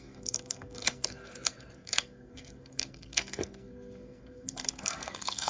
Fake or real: fake